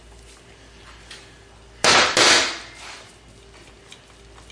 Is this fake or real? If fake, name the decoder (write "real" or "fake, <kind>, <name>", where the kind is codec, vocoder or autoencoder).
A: real